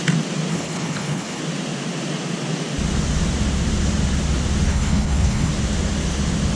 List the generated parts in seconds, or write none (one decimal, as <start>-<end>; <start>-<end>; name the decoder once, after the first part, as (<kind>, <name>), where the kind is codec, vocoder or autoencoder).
0.5-1.4 (codec, HILCodec); 4.7-5.5